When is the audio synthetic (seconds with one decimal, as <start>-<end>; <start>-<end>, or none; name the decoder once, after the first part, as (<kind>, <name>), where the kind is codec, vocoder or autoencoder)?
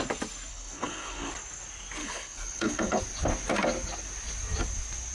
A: 0.5-1.3 (codec, HILCodec); 2.0-3.0